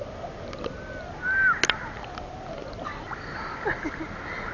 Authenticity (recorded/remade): recorded